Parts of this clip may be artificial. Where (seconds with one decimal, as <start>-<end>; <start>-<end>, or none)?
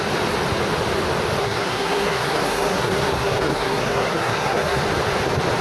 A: 1.4-4.8